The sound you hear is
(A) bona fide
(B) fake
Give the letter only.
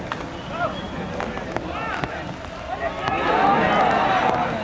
A